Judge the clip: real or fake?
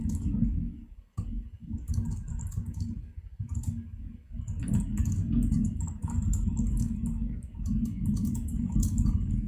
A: fake